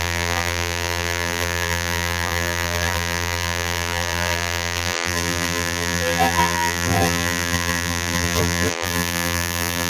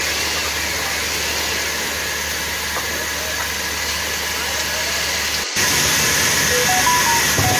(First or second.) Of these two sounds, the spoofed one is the first